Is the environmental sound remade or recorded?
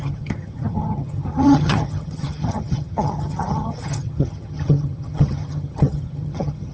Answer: remade